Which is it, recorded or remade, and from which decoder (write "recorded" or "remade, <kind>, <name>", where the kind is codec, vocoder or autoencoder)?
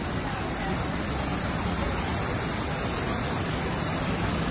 recorded